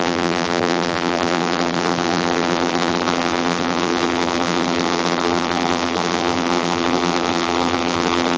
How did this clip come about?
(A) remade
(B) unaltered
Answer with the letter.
A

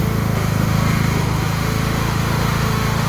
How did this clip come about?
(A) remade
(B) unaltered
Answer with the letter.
A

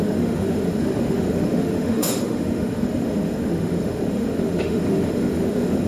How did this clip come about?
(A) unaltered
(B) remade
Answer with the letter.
B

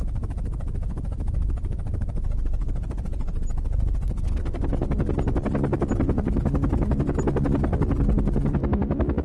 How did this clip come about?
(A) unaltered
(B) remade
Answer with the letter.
B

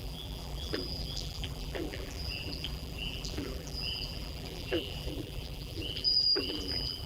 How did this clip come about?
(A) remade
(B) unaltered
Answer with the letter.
A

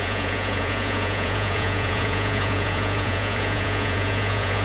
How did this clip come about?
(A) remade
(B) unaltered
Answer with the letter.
A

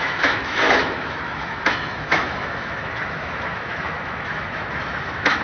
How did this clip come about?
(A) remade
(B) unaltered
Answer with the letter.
A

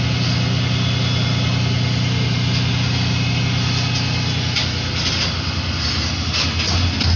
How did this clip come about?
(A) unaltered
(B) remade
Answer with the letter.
A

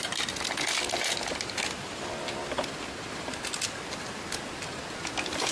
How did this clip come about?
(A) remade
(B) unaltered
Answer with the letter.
B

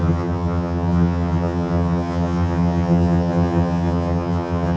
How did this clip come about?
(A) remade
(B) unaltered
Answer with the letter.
A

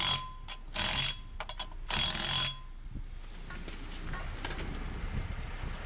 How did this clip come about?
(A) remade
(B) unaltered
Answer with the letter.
B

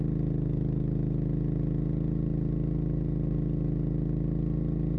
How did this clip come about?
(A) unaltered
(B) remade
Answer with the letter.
A